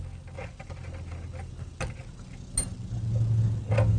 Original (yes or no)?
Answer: yes